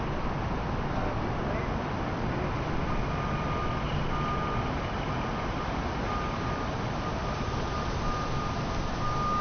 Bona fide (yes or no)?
yes